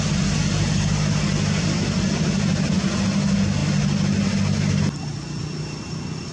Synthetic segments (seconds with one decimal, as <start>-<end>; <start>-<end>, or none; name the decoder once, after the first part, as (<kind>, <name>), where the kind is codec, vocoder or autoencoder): none